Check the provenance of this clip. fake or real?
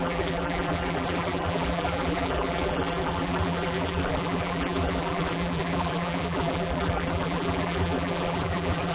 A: fake